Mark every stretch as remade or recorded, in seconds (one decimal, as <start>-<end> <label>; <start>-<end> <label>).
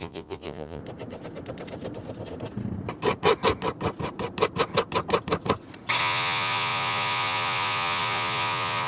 0.0-0.8 remade; 0.8-6.0 recorded; 6.0-8.9 remade